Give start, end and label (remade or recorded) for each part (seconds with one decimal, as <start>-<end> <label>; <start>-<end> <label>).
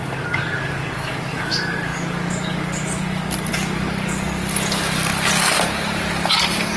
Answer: 0.0-4.4 remade; 4.4-6.3 recorded; 6.3-6.8 remade